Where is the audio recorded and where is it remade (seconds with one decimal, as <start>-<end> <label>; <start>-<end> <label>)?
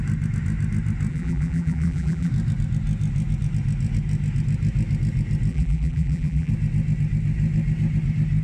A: 0.0-1.1 recorded; 1.1-2.3 remade; 2.3-5.5 recorded; 5.5-6.5 remade; 6.5-8.4 recorded